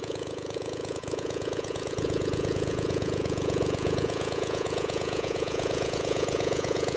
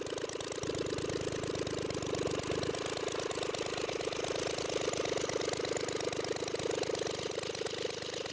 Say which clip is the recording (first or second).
second